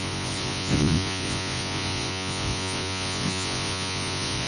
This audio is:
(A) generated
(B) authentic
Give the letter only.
A